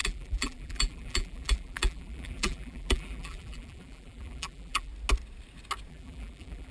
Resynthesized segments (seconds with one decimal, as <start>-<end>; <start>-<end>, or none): 0.0-4.9; 5.9-6.7